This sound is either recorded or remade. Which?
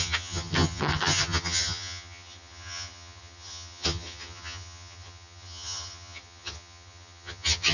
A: remade